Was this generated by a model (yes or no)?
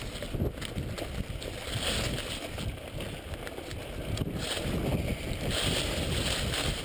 no